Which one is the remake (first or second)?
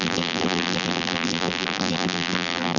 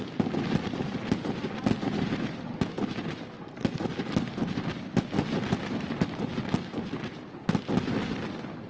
first